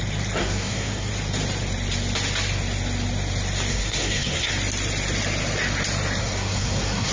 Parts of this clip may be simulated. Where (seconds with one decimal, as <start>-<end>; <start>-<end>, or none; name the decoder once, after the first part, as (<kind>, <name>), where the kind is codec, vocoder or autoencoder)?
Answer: 0.4-1.1 (codec, SNAC); 3.7-4.5; 6.2-7.1